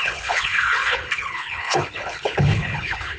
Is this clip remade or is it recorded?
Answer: remade